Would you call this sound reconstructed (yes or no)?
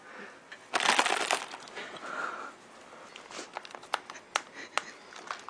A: no